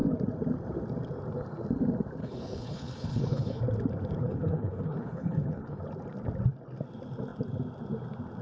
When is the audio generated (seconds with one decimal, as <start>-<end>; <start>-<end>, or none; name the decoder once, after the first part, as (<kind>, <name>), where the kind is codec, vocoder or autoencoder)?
2.2-3.6 (codec, HILCodec); 4.2-5.8